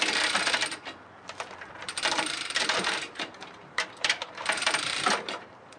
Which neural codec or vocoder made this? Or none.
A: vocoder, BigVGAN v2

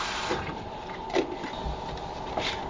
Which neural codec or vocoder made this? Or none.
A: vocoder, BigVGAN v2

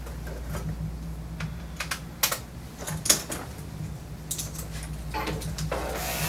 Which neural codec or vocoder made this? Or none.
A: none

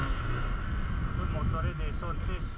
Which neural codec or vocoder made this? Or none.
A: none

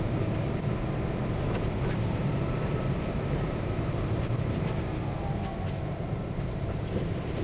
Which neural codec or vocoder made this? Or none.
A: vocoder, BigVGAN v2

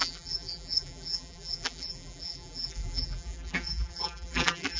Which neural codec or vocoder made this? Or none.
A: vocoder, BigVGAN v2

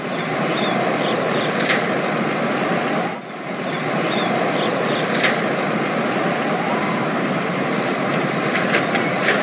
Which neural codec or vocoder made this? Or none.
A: vocoder, BigVGAN v2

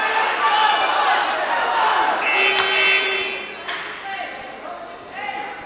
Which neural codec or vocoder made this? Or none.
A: none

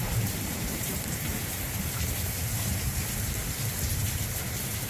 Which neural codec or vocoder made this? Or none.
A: vocoder, BigVGAN v2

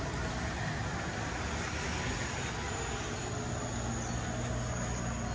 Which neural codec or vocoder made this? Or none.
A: none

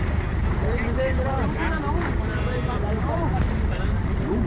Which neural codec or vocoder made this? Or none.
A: vocoder, BigVGAN v2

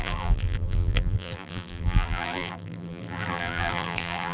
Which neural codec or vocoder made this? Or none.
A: vocoder, BigVGAN v2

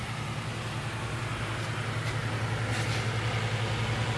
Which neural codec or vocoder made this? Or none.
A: none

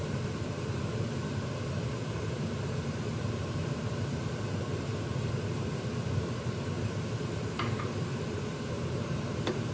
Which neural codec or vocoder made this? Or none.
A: vocoder, BigVGAN v2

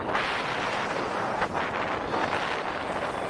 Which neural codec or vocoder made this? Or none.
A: none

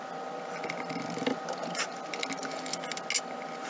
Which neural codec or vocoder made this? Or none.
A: none